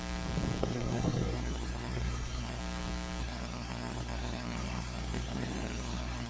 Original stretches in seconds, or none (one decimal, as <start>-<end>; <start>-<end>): 0.0-0.6; 2.6-3.2